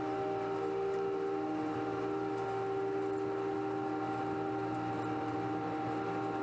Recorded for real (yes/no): yes